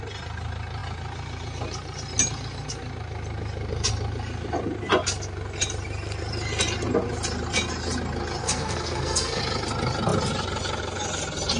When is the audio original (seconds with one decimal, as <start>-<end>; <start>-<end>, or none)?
0.0-8.4; 9.4-11.6